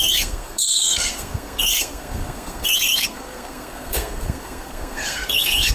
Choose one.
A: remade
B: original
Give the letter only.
A